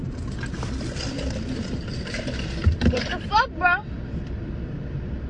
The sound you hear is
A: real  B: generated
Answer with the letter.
B